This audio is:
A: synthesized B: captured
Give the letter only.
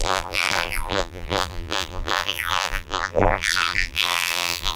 A